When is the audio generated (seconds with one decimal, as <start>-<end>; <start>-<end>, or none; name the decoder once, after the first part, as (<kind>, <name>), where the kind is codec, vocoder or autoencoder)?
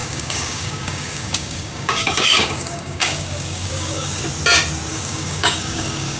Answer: 0.0-4.2 (codec, DAC); 4.9-6.2